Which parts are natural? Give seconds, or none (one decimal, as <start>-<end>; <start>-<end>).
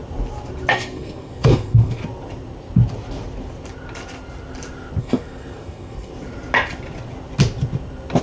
0.0-0.7; 2.0-5.0; 6.1-8.2